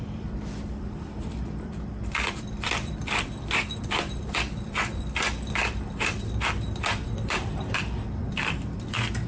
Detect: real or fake fake